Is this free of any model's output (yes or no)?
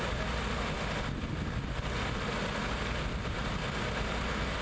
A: yes